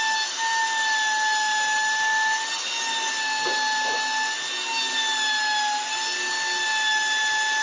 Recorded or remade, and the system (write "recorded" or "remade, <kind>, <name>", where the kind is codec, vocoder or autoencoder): recorded